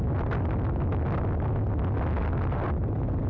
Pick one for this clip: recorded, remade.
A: recorded